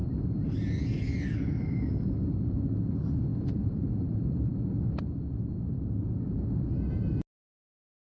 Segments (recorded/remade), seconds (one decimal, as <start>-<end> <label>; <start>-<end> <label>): 0.0-3.3 recorded; 3.3-5.4 remade; 5.4-8.1 recorded